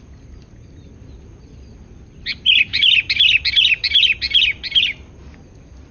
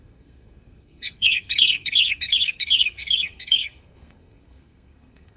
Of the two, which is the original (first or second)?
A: first